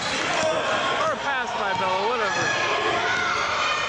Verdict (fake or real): real